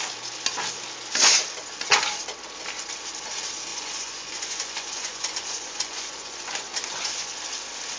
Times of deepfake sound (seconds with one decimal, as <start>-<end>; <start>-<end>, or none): 3.7-7.3